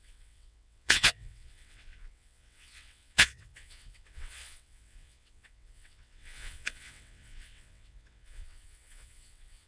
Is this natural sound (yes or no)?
no